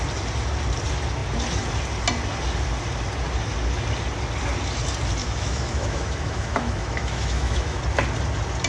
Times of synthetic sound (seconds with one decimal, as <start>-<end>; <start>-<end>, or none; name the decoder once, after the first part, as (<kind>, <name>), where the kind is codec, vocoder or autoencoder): 5.2-7.8 (autoencoder, DAC-VAE)

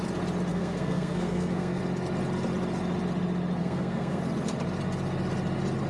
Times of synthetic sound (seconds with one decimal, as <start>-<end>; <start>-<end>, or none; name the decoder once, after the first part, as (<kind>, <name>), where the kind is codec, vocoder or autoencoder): 0.5-1.8 (codec, SNAC); 3.6-4.2